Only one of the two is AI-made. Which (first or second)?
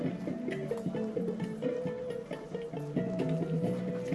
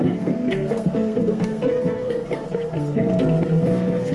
second